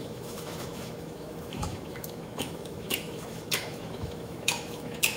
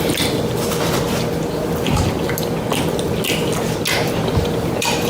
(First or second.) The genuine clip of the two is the second